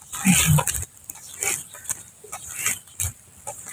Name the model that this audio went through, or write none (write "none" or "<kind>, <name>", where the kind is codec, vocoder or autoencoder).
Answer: none